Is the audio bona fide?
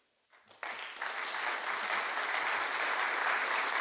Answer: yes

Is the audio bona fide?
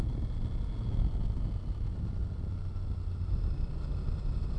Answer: yes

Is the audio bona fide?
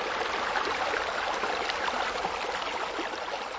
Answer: yes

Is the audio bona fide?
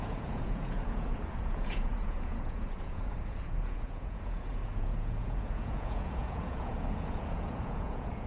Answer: no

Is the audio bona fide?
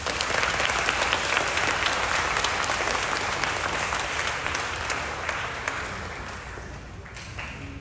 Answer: yes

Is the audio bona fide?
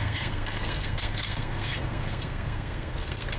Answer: no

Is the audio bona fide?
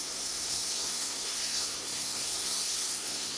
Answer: no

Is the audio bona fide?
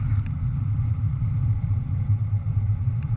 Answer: no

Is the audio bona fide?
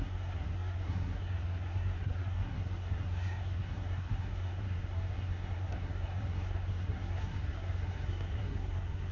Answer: no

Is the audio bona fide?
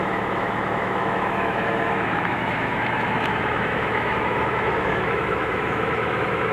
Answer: no